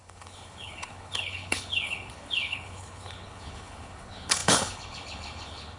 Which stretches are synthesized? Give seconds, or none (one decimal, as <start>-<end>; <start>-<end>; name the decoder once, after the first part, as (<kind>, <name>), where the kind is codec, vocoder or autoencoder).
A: 0.0-5.8 (codec, HILCodec)